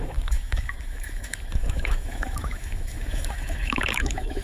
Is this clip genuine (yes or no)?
no